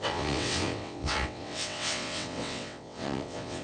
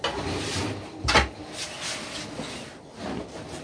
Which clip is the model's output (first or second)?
first